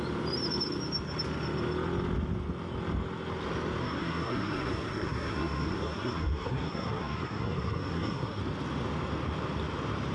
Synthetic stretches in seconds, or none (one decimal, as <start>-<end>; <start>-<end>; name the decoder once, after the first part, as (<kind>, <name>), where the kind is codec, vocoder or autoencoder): 3.8-8.4 (codec, SNAC)